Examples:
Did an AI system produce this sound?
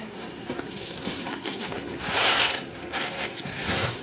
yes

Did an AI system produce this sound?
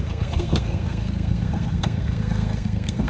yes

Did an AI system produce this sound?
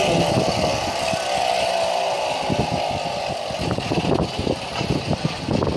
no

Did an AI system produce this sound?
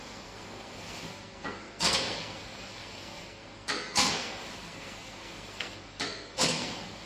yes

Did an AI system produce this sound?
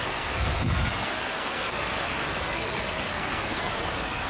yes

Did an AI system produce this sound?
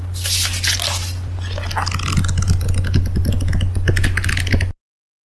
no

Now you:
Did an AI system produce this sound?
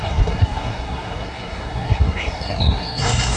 yes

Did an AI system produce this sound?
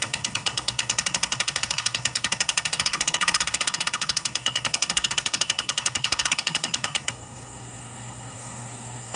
yes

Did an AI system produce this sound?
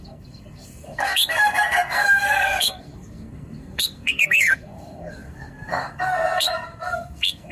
yes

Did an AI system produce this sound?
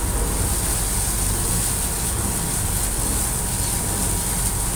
no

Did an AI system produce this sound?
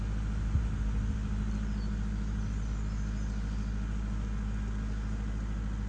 no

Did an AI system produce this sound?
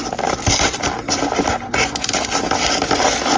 no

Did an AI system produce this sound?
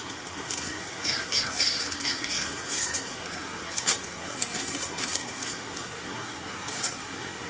yes